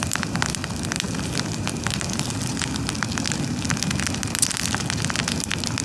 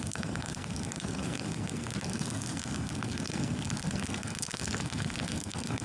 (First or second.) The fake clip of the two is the second